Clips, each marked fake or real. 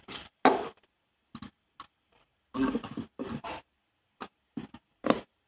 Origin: real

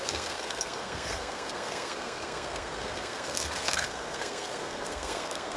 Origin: fake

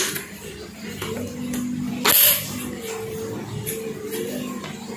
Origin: real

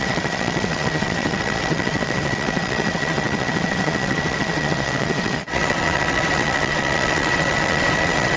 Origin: fake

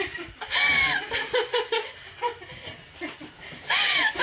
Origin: real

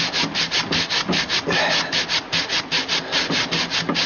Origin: real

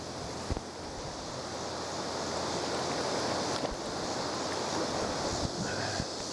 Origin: real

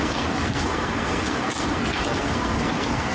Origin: fake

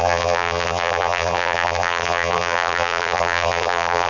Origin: fake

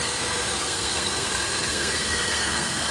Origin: fake